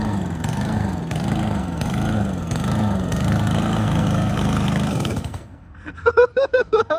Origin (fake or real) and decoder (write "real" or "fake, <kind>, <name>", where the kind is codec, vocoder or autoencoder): fake, codec, SNAC